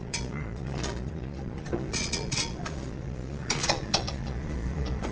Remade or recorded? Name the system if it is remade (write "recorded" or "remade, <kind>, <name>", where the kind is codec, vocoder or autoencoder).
remade, vocoder, Vocos